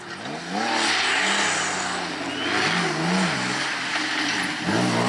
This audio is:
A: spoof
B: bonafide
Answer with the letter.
B